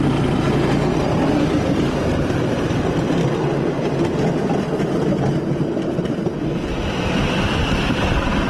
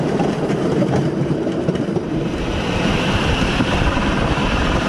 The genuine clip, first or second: first